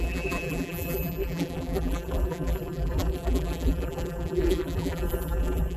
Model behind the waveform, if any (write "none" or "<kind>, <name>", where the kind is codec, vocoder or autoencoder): vocoder, BigVGAN v2